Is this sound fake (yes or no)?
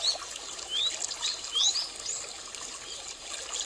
no